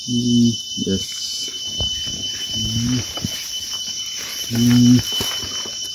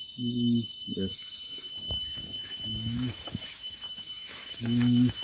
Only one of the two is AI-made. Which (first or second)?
second